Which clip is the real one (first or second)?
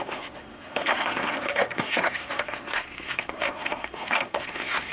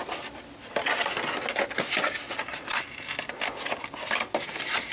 second